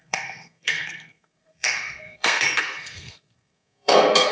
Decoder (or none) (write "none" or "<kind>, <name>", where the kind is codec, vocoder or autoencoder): codec, SNAC